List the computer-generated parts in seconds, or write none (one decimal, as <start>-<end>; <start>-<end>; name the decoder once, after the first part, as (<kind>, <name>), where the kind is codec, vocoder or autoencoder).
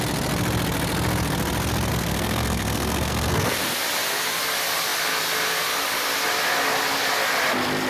1.9-3.6 (codec, SNAC)